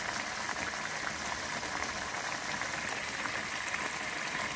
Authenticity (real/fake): real